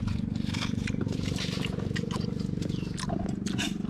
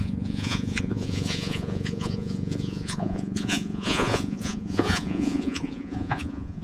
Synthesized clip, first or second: second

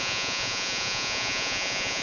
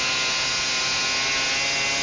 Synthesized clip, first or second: first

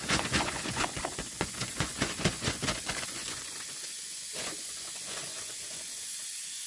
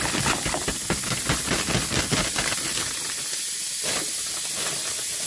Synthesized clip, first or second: first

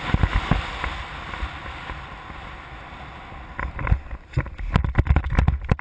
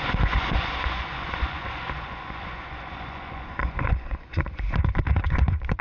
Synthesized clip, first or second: second